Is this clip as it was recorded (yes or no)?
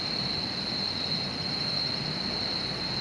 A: yes